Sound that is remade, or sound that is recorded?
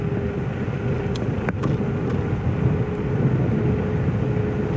recorded